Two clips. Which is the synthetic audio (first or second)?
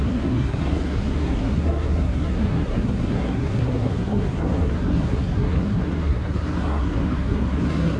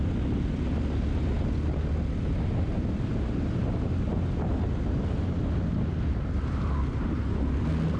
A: first